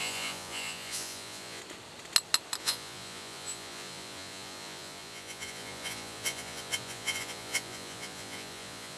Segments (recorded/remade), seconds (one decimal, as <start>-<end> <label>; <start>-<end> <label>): 0.0-1.6 remade; 1.6-2.6 recorded; 2.6-9.0 remade